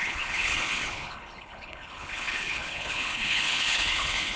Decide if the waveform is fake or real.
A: fake